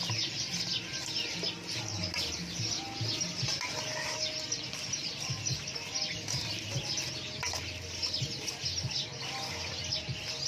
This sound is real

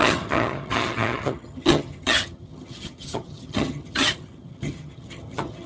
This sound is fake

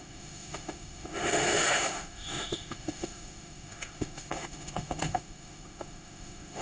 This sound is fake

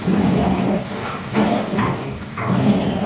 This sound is fake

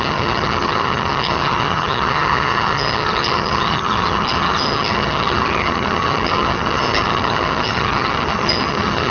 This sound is fake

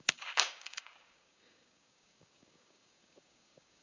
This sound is fake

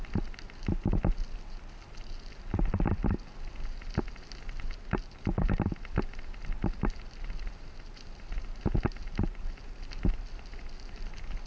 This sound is real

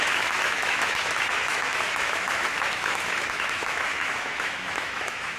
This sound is fake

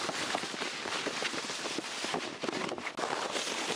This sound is real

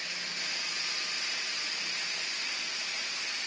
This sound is real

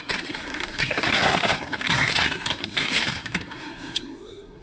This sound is fake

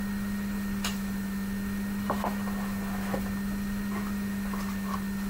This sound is real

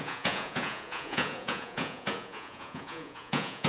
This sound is fake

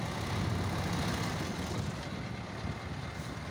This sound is real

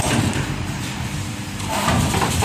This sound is fake